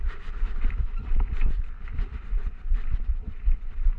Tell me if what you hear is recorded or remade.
remade